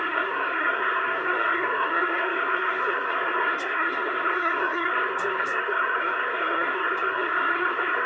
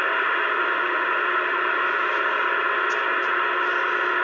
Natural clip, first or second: second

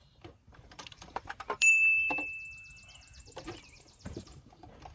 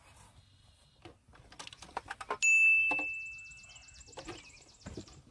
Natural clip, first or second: second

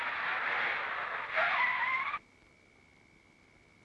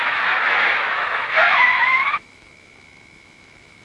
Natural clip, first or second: first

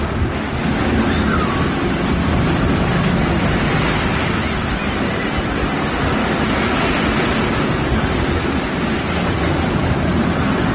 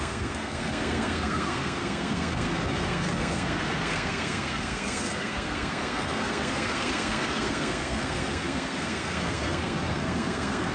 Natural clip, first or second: first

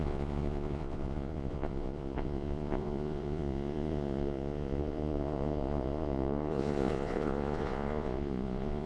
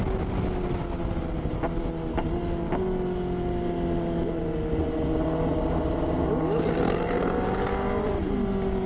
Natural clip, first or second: second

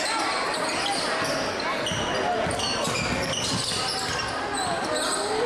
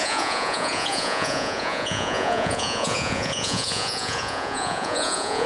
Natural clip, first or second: first